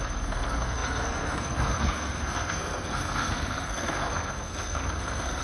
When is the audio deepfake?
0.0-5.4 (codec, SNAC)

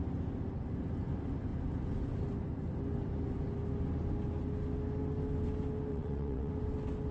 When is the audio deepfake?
5.9-6.5 (vocoder, WaveNeXt)

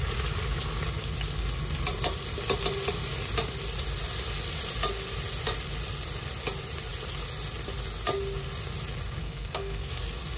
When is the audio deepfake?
9.2-9.9 (codec, SNAC)

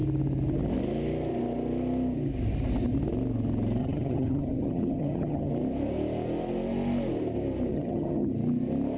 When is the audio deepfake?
3.8-5.5 (vocoder, HiFi-GAN); 7.7-8.3

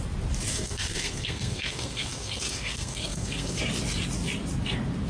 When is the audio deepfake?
0.5-3.6 (codec, SNAC)